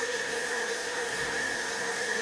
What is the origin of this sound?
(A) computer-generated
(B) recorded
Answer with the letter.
A